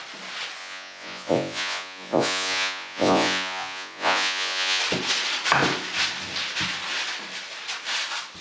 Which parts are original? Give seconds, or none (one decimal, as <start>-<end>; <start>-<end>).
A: 0.0-0.6; 4.8-8.4